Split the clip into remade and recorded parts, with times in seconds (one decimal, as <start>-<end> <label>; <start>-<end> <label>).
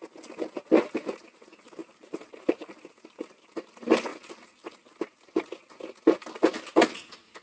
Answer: 0.0-1.8 recorded; 1.8-2.6 remade; 2.6-7.4 recorded